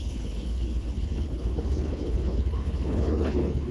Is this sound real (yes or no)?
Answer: no